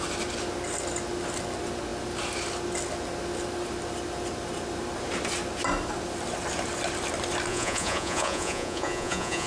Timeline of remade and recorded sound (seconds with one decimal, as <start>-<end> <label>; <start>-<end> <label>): 0.0-7.5 recorded; 7.5-9.5 remade